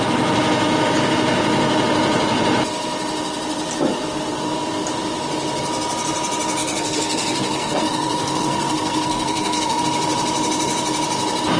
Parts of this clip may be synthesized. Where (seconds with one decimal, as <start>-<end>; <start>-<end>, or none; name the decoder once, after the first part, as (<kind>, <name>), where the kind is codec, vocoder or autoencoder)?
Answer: 6.6-9.8 (codec, SNAC)